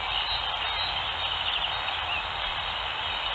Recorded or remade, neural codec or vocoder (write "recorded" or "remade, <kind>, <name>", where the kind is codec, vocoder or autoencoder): recorded